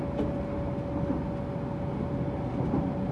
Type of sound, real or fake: real